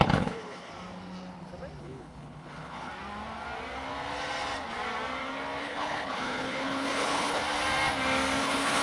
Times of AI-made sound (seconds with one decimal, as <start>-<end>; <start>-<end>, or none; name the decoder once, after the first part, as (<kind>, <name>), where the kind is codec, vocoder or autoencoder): 0.0-0.7 (codec, HILCodec); 1.8-2.9; 5.6-7.4; 8.4-8.8